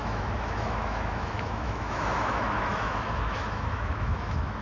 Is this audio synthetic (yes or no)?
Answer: yes